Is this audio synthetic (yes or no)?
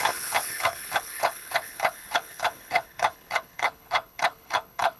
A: yes